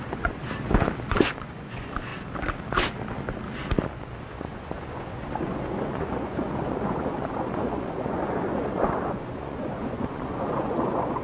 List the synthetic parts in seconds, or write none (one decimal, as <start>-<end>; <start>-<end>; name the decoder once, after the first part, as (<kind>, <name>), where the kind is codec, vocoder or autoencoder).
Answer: 0.0-0.4 (vocoder, Vocos); 1.1-2.1; 4.2-11.2

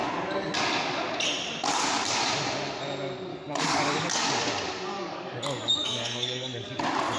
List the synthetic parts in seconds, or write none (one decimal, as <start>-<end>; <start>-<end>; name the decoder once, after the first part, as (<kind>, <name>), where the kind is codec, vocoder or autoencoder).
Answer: 3.3-4.3 (codec, DAC); 4.9-6.8

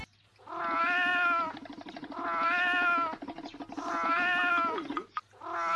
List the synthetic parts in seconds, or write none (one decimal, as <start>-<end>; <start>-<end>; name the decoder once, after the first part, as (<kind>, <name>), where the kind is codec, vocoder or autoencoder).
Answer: none

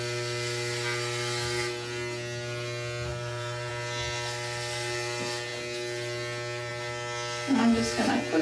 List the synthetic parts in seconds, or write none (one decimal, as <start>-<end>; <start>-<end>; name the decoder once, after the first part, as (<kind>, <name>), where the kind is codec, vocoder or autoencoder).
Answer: 3.1-3.7 (vocoder, BigVGAN v2)

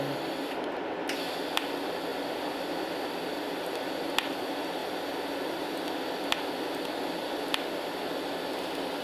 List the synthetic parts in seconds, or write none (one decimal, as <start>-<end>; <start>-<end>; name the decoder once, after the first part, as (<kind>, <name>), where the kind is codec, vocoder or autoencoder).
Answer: none

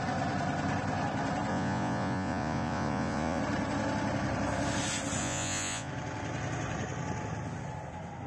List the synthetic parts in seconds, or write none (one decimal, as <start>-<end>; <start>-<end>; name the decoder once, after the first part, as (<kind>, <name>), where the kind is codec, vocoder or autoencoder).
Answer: 1.5-3.4 (vocoder, Vocos); 5.2-5.9

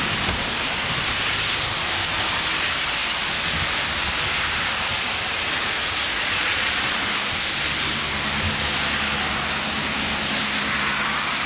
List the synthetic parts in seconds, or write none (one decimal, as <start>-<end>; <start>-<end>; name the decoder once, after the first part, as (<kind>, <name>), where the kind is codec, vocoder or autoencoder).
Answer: 6.1-6.7 (vocoder, Vocos)

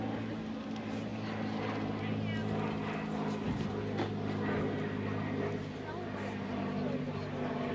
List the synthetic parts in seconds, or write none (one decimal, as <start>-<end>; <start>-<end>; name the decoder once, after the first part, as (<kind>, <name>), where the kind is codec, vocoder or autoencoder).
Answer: none